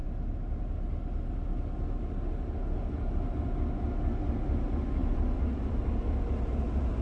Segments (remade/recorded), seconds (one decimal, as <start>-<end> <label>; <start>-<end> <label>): 0.0-5.0 recorded; 5.0-5.9 remade; 5.9-7.0 recorded